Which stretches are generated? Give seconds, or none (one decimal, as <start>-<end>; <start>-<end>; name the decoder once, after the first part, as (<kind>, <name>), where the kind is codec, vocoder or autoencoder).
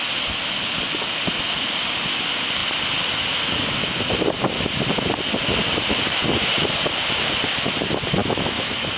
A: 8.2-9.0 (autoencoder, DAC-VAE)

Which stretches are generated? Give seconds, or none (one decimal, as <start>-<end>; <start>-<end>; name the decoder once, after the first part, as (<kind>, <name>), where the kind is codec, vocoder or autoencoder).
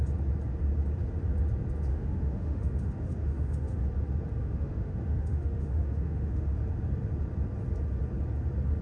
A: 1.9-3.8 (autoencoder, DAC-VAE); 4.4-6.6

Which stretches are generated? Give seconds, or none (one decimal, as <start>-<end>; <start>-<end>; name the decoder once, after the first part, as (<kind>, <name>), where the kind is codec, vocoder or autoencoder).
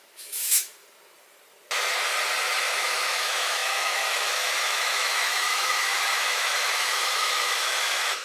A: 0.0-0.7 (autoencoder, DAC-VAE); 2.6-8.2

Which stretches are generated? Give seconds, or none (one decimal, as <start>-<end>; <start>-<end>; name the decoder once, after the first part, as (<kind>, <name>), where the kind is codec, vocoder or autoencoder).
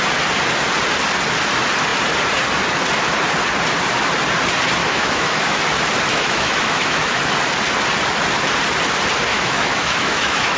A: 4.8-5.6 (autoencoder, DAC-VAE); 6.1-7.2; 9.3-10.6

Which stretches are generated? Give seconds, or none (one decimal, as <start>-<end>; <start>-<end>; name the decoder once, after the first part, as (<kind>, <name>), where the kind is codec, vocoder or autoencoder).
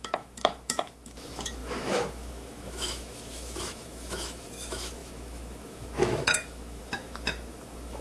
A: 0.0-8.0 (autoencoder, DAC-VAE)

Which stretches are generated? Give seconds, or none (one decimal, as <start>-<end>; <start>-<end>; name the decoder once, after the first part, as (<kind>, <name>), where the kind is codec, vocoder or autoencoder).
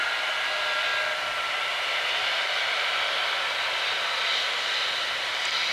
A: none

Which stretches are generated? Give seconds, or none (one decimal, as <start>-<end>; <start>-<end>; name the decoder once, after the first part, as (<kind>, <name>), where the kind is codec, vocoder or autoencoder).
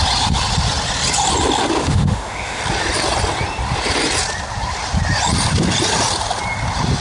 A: 1.8-2.6 (autoencoder, DAC-VAE)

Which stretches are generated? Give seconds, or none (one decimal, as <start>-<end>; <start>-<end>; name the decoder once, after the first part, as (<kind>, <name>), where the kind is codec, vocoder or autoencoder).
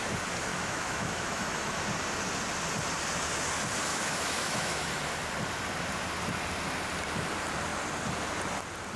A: 0.5-1.8 (autoencoder, DAC-VAE); 3.9-4.9